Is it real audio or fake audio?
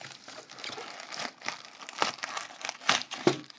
real